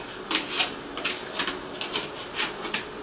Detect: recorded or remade recorded